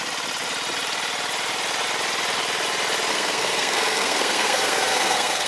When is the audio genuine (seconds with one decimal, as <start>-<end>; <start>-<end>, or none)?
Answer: 0.0-3.1